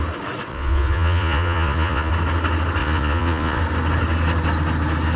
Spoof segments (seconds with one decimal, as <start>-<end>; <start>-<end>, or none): 0.5-2.1; 2.8-3.6